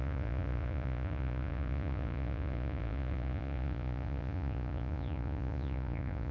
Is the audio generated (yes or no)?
yes